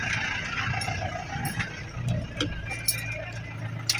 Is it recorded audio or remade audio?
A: recorded